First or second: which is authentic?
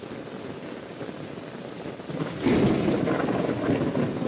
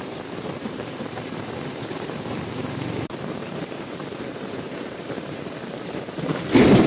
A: first